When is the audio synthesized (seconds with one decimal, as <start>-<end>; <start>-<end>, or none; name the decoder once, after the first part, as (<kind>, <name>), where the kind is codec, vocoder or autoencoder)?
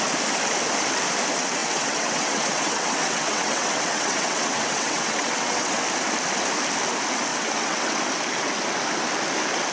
1.6-5.8 (vocoder, WaveNeXt); 7.3-8.0